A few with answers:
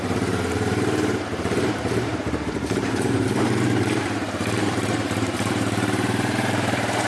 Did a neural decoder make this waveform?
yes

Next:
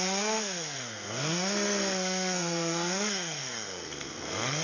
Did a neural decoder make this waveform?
yes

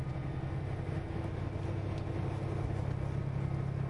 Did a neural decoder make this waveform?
no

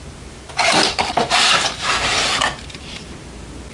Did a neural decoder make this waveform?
yes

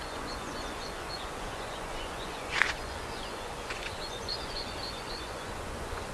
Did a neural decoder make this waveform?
yes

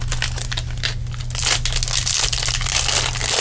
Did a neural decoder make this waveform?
no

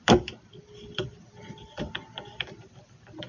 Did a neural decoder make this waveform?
yes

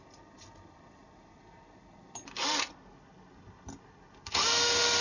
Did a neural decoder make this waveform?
no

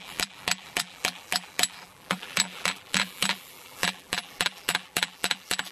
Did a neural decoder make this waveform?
yes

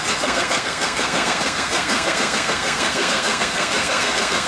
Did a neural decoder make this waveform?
yes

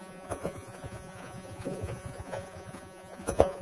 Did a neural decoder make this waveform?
yes